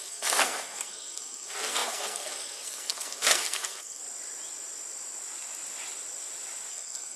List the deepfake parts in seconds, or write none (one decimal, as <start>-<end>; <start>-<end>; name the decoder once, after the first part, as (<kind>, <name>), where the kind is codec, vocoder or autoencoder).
0.0-4.0 (codec, SNAC); 6.7-7.2